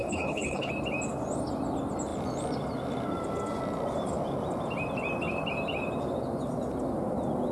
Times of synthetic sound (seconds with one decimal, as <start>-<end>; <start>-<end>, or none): 0.0-0.7